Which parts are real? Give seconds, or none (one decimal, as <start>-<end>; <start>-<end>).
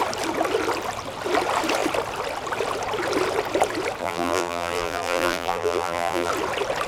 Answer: 0.0-4.0; 6.3-6.9